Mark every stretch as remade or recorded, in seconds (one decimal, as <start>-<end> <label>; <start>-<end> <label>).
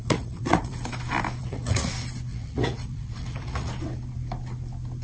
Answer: 0.0-0.9 remade; 0.9-1.4 recorded; 1.4-1.9 remade; 1.9-2.3 recorded; 2.3-3.7 remade; 3.7-5.0 recorded